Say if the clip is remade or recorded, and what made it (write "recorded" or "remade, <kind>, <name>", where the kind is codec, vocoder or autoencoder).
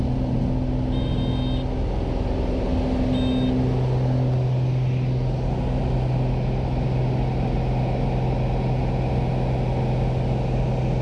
recorded